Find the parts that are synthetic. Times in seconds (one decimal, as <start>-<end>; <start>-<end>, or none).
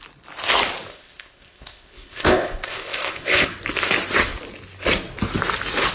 0.9-3.5